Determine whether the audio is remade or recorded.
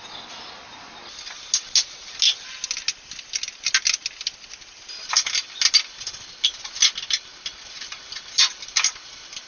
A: recorded